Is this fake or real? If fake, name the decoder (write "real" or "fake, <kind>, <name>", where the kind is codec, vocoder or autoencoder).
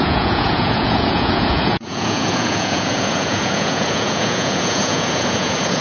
fake, vocoder, Vocos